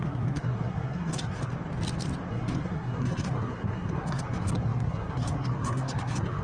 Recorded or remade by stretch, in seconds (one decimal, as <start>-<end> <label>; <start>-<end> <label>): 0.0-1.5 remade; 1.5-2.3 recorded; 2.3-6.4 remade